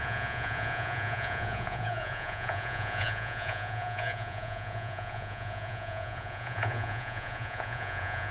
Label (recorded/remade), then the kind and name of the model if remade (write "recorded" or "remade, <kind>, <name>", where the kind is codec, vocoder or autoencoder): remade, vocoder, Vocos